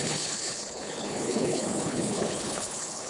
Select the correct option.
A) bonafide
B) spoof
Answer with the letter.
B